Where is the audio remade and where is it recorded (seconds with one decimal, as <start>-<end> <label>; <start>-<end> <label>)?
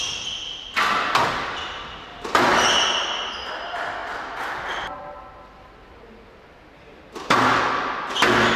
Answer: 0.0-8.6 recorded